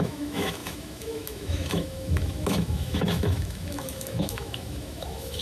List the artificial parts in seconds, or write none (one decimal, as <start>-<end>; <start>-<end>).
0.0-5.4